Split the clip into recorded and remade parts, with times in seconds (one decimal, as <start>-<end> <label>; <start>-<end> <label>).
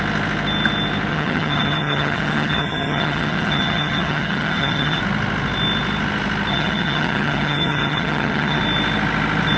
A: 0.0-1.1 recorded; 1.1-5.0 remade; 5.0-6.5 recorded; 6.5-8.6 remade; 8.6-9.6 recorded